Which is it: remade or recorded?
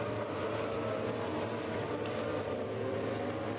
recorded